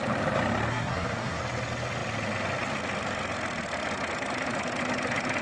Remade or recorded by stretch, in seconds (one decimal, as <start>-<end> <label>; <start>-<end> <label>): 0.0-0.7 recorded; 0.7-1.4 remade; 1.4-5.4 recorded